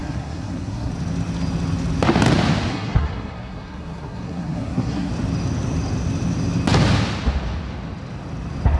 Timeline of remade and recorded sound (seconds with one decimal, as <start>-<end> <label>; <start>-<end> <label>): 0.0-0.9 remade; 0.9-2.7 recorded; 2.7-5.1 remade; 5.1-8.8 recorded